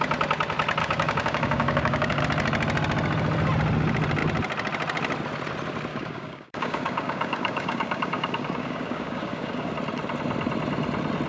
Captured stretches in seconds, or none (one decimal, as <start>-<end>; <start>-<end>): 0.0-0.8; 2.2-5.9; 9.7-11.3